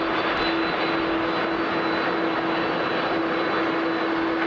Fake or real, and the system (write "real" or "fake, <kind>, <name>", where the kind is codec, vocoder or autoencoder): real